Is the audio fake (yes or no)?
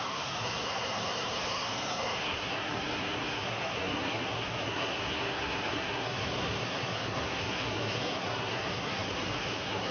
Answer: yes